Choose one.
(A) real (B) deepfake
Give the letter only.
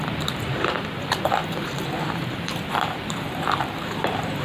B